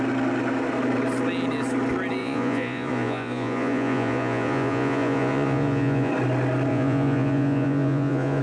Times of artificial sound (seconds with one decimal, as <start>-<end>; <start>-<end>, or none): 2.2-6.1; 6.7-8.4